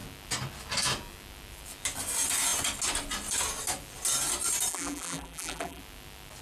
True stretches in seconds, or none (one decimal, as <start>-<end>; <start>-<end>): 0.0-4.7; 5.8-6.4